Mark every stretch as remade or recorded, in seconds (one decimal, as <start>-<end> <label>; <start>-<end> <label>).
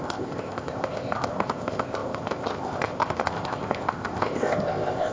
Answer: 0.0-5.1 remade